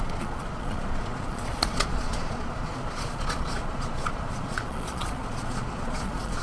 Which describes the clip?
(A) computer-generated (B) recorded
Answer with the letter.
A